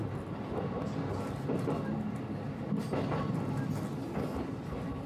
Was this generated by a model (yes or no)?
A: no